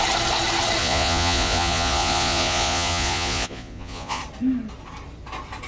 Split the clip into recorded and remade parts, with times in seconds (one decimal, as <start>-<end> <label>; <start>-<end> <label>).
0.0-0.8 recorded; 0.8-4.2 remade; 4.2-5.7 recorded